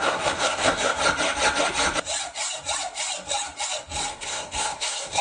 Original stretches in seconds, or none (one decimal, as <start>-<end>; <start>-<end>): 1.0-4.1